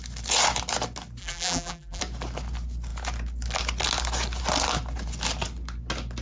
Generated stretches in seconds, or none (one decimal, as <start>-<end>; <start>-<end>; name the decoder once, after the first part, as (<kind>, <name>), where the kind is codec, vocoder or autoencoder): 1.2-2.0 (vocoder, BigVGAN v2)